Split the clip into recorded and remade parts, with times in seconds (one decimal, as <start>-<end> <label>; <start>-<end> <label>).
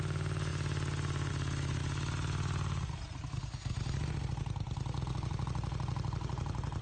0.0-6.8 recorded